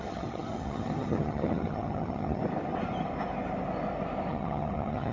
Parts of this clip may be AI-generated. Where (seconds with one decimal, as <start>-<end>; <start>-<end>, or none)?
0.0-2.4; 4.3-5.1